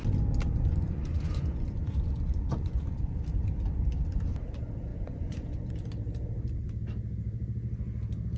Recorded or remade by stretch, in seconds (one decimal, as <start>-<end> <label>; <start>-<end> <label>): 0.0-0.7 recorded; 0.7-3.2 remade; 3.2-4.9 recorded; 4.9-5.7 remade; 5.7-8.4 recorded